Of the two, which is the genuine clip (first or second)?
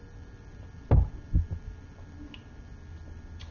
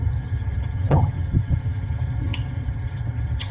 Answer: first